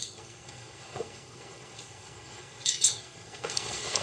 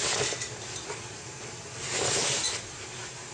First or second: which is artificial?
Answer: first